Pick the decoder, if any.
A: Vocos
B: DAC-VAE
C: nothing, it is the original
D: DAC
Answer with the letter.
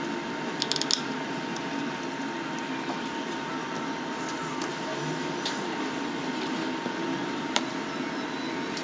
C